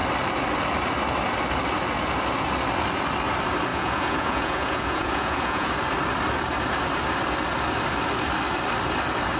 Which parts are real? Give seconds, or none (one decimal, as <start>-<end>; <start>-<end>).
0.0-3.7; 5.7-9.4